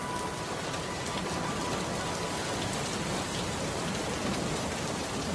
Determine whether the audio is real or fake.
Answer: real